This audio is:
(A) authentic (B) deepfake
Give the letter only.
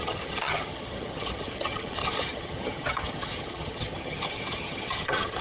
B